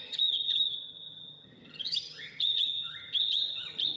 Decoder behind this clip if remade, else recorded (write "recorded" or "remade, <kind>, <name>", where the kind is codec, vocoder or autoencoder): remade, vocoder, HiFi-GAN